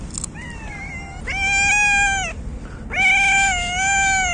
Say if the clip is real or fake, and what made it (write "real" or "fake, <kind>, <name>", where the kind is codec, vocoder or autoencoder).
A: real